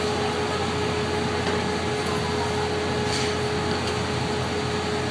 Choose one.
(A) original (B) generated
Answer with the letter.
A